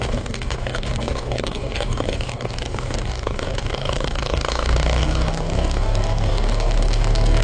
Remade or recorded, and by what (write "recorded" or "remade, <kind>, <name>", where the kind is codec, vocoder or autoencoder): remade, codec, DAC